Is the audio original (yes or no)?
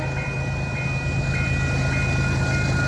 yes